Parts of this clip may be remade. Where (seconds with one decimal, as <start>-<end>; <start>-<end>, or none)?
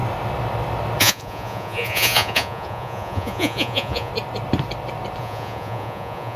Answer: 1.0-4.1; 5.2-6.4